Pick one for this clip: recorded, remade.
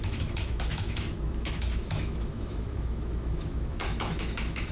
remade